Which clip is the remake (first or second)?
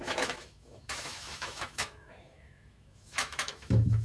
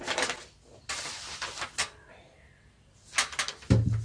first